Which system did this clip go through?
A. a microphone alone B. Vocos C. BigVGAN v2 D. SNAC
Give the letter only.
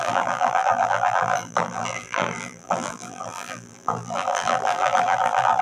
C